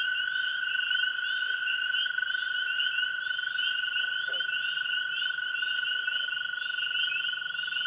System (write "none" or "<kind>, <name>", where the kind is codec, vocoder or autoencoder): none